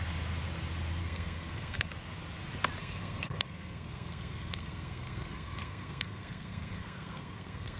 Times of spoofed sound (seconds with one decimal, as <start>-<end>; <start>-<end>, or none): 1.0-1.9; 2.8-7.8